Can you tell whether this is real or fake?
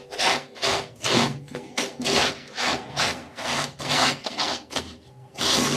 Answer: fake